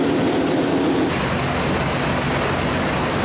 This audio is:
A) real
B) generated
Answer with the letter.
A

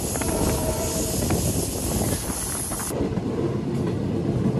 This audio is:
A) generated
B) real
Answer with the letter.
A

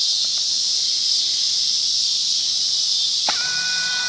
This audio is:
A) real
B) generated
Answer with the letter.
A